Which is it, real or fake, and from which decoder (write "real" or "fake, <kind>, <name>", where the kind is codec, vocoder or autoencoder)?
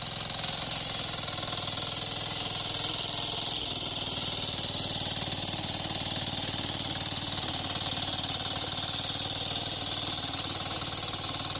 real